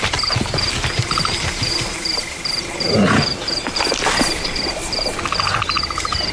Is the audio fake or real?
real